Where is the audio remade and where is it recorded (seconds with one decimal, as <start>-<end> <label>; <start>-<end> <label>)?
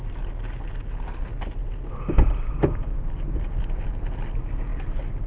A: 0.0-5.3 recorded